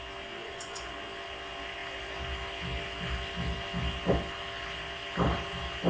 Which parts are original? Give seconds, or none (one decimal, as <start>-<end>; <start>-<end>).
0.0-0.4; 0.9-5.9